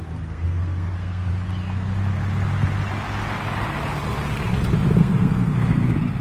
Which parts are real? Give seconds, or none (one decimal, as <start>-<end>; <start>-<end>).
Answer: 1.3-5.0